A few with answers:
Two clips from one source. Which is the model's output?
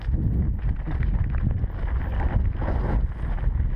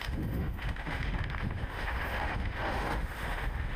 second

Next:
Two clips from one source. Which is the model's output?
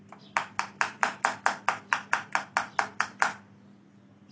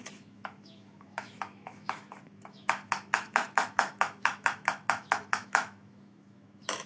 second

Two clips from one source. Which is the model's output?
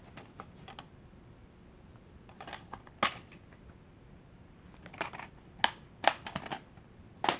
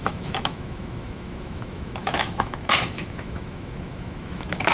second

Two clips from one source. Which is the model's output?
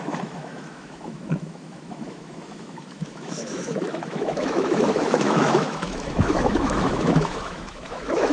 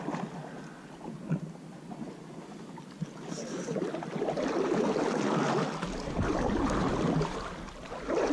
first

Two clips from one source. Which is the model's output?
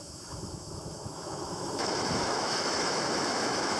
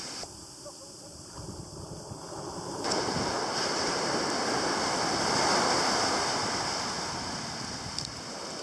first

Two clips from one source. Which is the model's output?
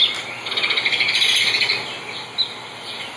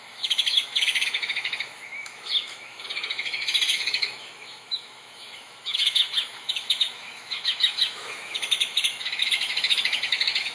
second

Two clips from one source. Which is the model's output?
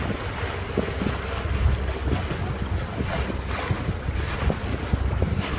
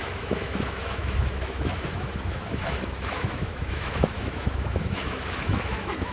second